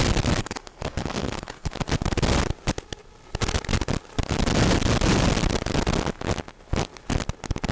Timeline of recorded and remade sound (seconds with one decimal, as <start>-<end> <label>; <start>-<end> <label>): 0.0-0.4 recorded; 0.4-1.7 remade; 1.7-7.7 recorded